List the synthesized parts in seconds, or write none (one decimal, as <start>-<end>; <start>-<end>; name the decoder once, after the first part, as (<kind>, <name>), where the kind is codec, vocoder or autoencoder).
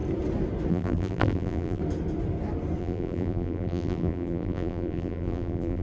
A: 0.7-1.8 (vocoder, BigVGAN v2); 2.8-5.8